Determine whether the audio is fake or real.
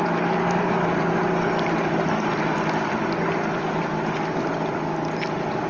real